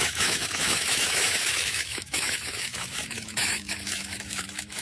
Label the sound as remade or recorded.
remade